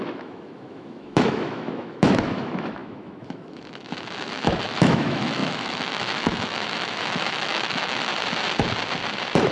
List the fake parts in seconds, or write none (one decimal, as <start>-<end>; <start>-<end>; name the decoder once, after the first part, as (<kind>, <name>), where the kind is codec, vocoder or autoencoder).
0.0-8.1 (autoencoder, DAC-VAE)